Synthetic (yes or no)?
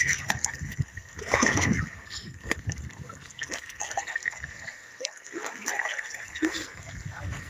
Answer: yes